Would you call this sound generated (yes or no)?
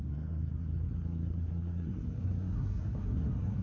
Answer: yes